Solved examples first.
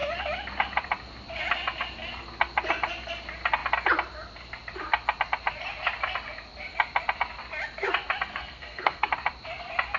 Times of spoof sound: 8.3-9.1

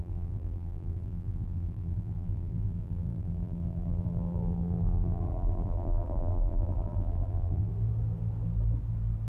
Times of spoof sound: 0.0-7.7

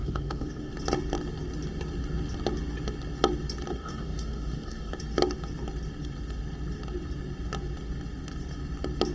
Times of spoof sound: 0.0-0.7; 3.7-4.9